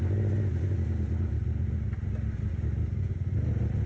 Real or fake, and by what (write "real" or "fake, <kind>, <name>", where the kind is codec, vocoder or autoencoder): real